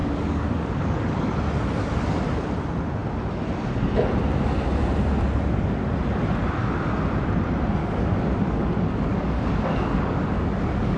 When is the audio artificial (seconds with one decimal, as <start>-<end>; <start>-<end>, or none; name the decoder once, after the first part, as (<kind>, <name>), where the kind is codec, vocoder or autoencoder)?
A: 0.0-1.3 (codec, DAC); 7.8-11.0